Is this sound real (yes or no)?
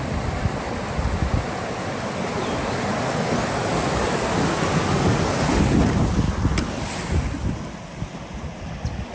yes